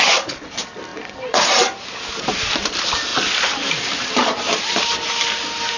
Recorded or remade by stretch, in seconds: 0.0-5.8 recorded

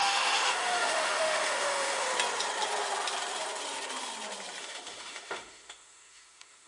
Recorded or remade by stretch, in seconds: 0.0-2.1 remade; 2.1-4.6 recorded; 4.6-6.7 remade

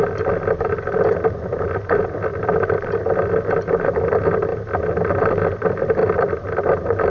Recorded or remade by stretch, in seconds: 0.0-7.1 recorded

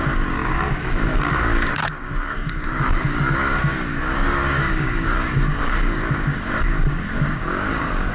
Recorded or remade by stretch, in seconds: 0.0-8.1 remade

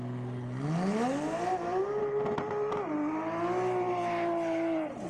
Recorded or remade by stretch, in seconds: 0.0-5.1 remade

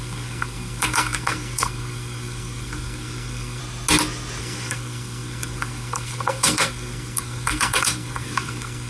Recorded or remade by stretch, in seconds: 0.0-3.6 remade; 3.6-4.4 recorded; 4.4-8.9 remade

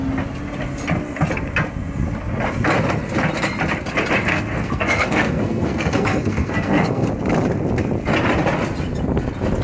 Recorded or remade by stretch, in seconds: 0.0-4.3 recorded; 4.3-7.1 remade; 7.1-9.6 recorded